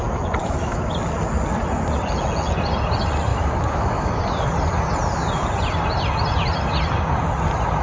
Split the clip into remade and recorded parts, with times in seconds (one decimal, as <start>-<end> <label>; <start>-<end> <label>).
0.0-0.4 recorded; 0.4-0.9 remade; 0.9-3.3 recorded; 3.3-4.2 remade; 4.2-7.8 recorded